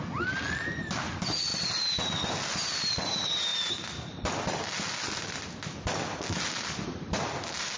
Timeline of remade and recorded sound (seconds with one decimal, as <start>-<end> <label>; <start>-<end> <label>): 0.0-7.8 recorded